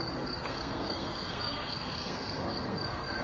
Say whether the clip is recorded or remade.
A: remade